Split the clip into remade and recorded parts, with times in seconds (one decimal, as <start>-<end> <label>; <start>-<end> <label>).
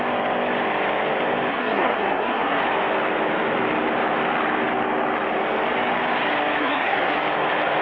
0.0-1.5 recorded; 1.5-2.6 remade; 2.6-6.6 recorded; 6.6-7.1 remade; 7.1-7.8 recorded